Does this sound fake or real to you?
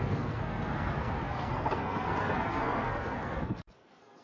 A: fake